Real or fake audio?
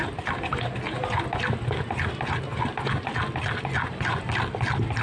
real